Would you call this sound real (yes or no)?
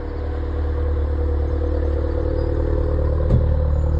yes